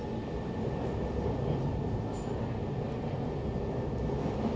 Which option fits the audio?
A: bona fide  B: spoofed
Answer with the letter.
A